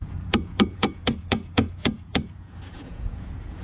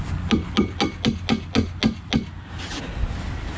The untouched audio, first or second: second